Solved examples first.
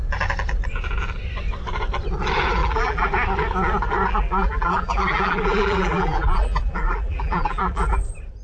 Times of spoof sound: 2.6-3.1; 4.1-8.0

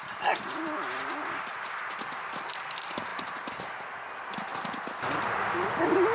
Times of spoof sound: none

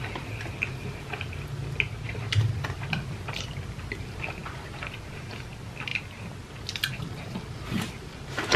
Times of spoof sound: none